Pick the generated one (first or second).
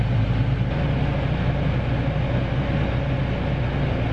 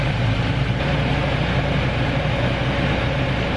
second